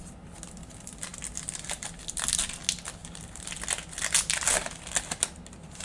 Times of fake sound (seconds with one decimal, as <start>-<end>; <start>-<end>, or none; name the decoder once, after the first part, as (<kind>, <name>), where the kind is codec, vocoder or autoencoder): 3.0-3.5 (vocoder, BigVGAN v2)